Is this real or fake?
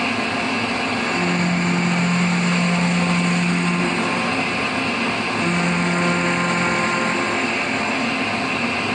real